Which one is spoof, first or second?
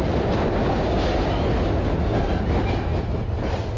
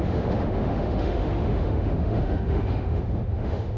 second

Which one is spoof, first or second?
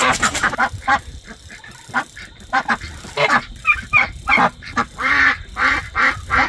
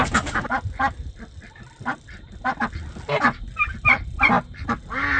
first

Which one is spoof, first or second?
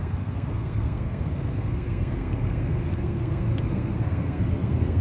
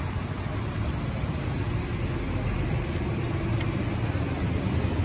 first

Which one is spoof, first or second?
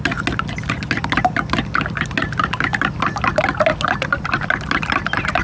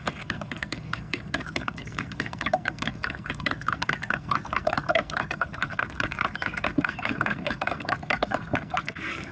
second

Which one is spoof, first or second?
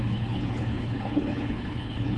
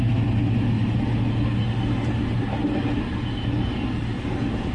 first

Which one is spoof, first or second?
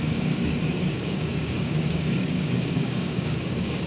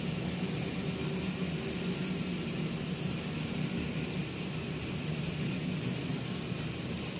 first